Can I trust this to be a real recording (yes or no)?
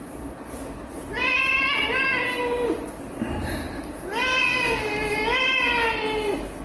yes